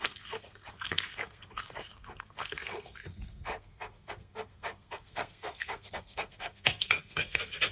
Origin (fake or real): fake